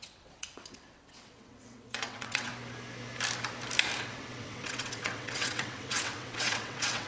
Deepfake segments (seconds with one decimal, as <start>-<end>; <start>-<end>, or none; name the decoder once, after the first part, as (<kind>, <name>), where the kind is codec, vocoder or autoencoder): 0.0-2.5 (vocoder, WaveNeXt); 4.0-7.1

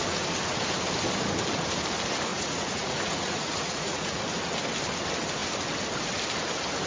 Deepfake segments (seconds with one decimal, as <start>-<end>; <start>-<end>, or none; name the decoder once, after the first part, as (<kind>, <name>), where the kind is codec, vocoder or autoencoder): 2.3-4.2 (vocoder, Vocos)

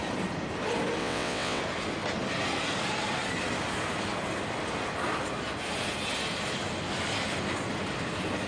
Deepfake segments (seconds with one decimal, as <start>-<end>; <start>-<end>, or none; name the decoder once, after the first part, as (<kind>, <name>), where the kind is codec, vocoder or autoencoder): 1.0-1.6 (vocoder, WaveNeXt)

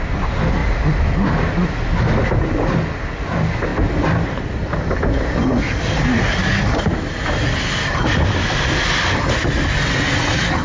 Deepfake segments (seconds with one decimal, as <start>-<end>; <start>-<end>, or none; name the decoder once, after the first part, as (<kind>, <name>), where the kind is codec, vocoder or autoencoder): none

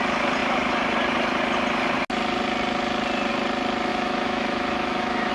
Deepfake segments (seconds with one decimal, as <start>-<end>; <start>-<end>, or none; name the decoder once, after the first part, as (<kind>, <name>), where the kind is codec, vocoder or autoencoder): 3.9-5.3 (autoencoder, DAC-VAE)

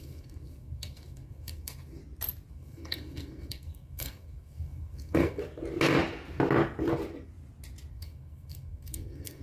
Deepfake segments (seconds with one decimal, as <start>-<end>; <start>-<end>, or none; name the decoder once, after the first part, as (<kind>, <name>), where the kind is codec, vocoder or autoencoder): 0.0-2.0 (codec, SNAC); 2.5-5.4; 7.9-9.4